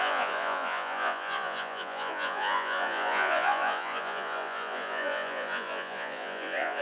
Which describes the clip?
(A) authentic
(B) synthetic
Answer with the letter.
B